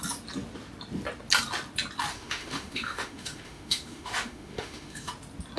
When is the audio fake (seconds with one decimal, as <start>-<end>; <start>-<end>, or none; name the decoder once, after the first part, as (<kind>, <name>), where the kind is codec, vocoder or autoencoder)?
2.1-5.1 (autoencoder, DAC-VAE)